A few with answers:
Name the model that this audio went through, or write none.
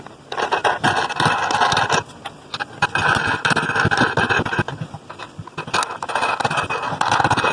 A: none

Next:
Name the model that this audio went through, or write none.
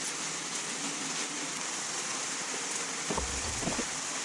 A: none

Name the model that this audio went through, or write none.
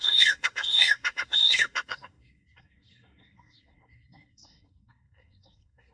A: codec, SNAC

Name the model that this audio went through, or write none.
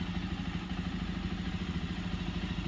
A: none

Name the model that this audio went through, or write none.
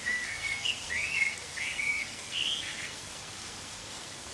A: codec, SNAC